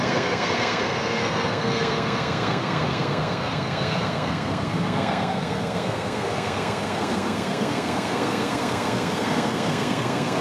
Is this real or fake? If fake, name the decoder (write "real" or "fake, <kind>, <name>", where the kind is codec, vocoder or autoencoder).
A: fake, codec, SNAC